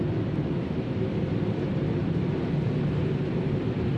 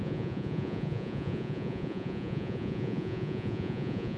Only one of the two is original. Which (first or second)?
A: first